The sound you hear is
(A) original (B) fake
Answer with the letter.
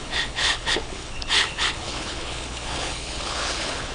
B